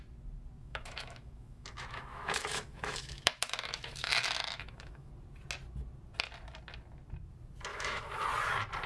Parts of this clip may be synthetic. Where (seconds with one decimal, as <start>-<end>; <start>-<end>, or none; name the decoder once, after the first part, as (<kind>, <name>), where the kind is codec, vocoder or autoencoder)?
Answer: 0.6-5.1 (autoencoder, DAC-VAE); 7.7-8.2

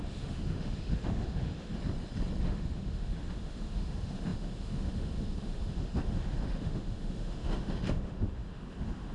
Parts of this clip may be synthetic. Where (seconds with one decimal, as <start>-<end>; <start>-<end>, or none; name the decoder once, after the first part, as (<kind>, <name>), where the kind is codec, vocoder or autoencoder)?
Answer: 0.0-1.7 (autoencoder, DAC-VAE); 2.4-9.1

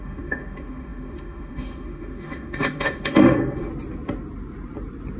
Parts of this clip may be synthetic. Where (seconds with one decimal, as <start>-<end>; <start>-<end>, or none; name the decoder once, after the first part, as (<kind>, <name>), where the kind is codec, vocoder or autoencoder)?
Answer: 0.0-3.7 (autoencoder, DAC-VAE)

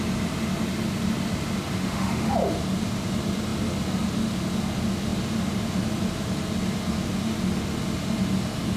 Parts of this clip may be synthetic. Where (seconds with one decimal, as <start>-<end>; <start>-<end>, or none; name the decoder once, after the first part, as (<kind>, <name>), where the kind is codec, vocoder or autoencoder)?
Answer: 1.8-2.3 (autoencoder, DAC-VAE)

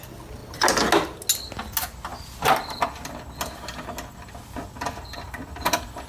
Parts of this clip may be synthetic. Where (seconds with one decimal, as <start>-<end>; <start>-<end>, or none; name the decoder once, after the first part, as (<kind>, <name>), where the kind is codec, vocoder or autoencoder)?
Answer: none

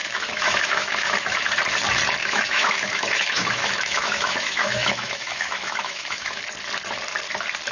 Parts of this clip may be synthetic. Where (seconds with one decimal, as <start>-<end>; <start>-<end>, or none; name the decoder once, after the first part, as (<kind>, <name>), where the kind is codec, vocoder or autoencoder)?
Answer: 0.0-1.5 (autoencoder, DAC-VAE); 2.2-6.4

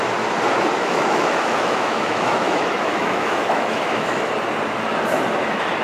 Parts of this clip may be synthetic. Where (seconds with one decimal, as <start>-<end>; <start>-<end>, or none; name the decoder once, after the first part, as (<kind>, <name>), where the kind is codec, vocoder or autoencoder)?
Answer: 0.8-4.3 (autoencoder, DAC-VAE)